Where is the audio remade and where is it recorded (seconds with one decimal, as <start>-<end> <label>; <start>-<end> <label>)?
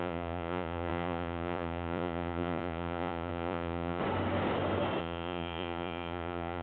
0.0-4.0 remade; 4.0-5.0 recorded; 5.0-6.6 remade